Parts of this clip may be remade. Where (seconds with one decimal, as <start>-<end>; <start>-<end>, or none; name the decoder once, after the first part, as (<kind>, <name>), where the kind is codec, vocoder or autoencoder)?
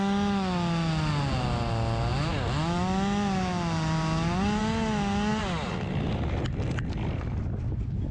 none